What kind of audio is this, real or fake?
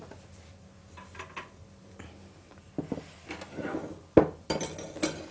real